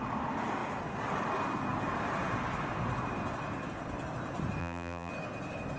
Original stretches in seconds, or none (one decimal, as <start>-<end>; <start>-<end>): 0.0-4.6; 5.1-5.8